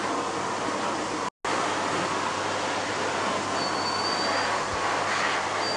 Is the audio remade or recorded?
recorded